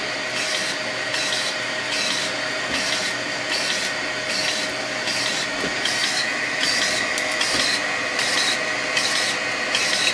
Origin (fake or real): real